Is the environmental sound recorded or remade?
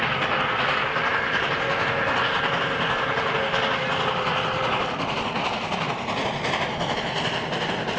recorded